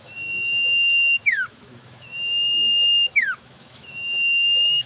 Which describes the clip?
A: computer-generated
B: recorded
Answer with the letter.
A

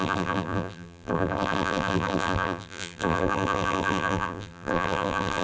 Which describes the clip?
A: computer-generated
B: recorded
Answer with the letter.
A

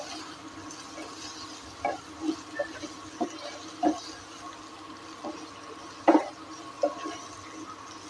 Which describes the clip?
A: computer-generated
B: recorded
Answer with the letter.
B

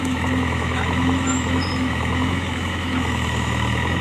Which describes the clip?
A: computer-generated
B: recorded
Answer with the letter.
A